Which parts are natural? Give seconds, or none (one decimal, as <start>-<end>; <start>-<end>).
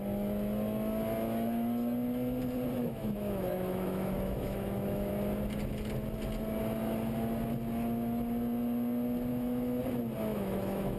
0.0-2.8; 5.1-9.3; 9.8-10.3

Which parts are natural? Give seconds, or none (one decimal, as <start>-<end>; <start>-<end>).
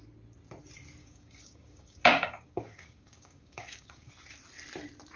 0.0-1.0; 4.1-5.2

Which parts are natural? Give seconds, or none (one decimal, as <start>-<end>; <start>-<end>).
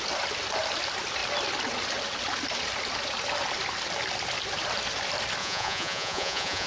0.0-5.4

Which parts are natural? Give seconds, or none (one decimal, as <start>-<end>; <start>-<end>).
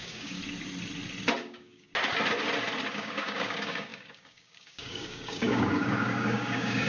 0.4-1.4; 1.9-2.9